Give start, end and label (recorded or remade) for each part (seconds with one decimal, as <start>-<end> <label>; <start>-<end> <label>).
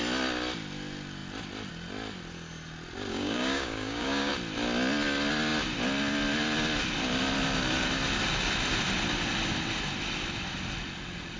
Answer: 0.0-3.1 recorded; 3.1-4.3 remade; 4.3-11.4 recorded